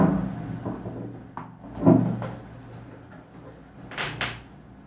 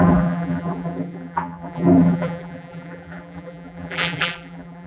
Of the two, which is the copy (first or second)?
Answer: second